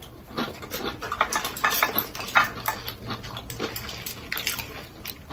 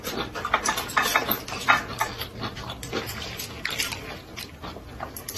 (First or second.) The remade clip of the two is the second